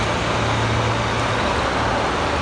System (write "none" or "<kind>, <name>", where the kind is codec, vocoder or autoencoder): none